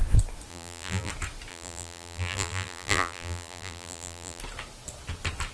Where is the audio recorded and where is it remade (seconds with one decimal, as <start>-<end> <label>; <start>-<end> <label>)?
0.0-0.5 recorded; 0.5-1.1 remade; 1.1-1.5 recorded; 1.5-4.4 remade; 4.4-5.5 recorded